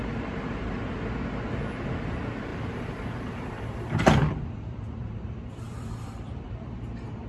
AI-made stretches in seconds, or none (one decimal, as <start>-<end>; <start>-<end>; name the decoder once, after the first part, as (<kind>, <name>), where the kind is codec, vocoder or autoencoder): 0.0-0.8 (vocoder, BigVGAN v2); 2.5-7.3